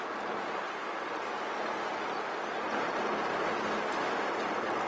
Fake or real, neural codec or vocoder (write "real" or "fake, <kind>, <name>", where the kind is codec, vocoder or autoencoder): real